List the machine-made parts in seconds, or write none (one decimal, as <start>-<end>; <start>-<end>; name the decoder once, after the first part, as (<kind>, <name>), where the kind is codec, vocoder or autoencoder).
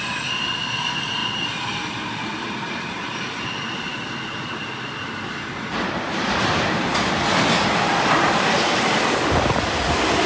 1.2-3.2 (vocoder, BigVGAN v2)